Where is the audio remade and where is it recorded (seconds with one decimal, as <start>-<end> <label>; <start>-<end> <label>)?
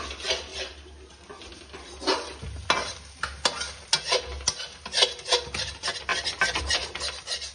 0.0-7.5 recorded